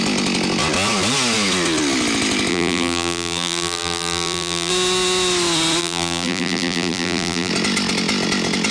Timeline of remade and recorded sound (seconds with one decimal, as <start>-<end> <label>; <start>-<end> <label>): 0.0-2.5 recorded; 2.5-4.7 remade; 4.7-5.8 recorded; 5.8-7.5 remade; 7.5-8.7 recorded